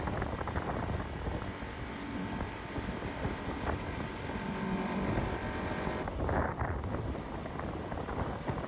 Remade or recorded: remade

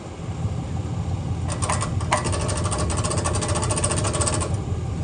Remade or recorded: recorded